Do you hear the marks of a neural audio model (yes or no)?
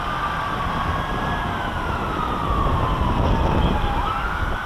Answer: no